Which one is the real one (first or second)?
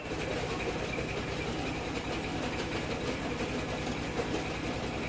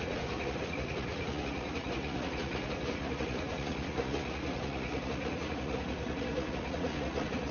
first